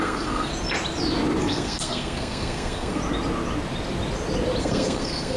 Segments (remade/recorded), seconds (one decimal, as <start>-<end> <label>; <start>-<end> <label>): 0.0-0.5 remade; 0.5-1.4 recorded; 1.4-3.0 remade; 3.0-4.6 recorded; 4.6-5.4 remade